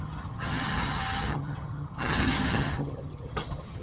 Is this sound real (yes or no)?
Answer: no